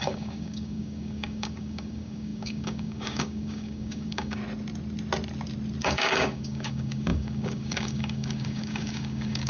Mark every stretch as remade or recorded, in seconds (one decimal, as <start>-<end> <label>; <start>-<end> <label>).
0.0-4.4 remade; 4.4-5.8 recorded; 5.8-9.5 remade